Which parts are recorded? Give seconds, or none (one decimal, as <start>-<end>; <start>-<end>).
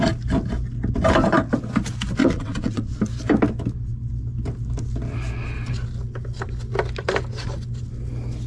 0.0-2.2; 2.9-8.5